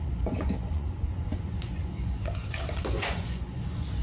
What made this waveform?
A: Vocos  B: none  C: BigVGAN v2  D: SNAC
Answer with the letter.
A